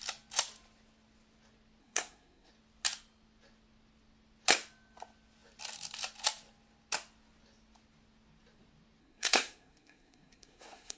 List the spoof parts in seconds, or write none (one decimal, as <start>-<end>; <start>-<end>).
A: 1.8-2.5; 9.0-11.0